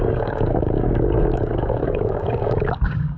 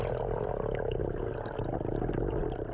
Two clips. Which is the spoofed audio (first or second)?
first